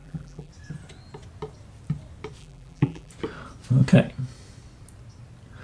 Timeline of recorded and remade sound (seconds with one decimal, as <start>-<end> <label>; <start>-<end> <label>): 0.0-0.5 remade; 0.5-2.4 recorded; 2.4-3.1 remade; 3.1-5.6 recorded